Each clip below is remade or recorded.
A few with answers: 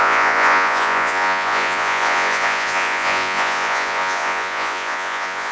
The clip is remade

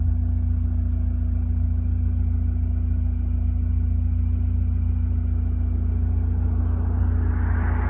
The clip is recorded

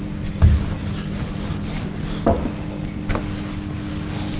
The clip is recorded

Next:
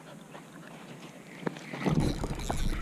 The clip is recorded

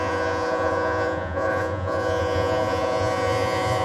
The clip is remade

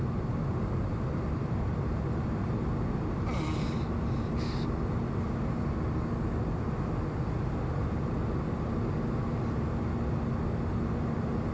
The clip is recorded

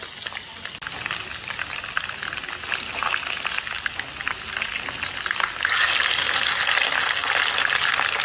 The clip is recorded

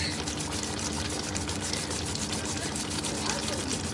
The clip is recorded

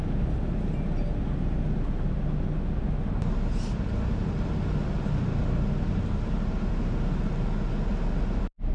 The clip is recorded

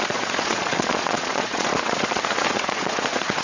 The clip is remade